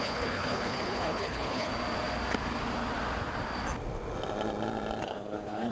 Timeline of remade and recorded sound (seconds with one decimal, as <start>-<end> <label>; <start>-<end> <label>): 0.0-1.7 remade; 1.7-5.0 recorded; 5.0-5.7 remade

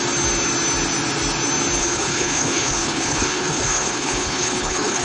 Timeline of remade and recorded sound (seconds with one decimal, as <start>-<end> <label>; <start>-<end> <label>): 0.0-1.8 recorded; 1.8-5.0 remade